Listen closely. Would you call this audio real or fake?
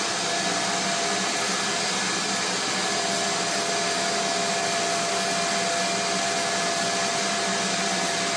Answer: real